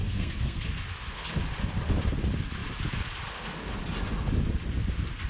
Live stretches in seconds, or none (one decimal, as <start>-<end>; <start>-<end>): 0.7-5.3